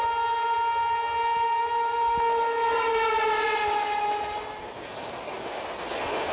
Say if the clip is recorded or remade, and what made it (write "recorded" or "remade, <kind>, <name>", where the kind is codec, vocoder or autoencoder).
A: recorded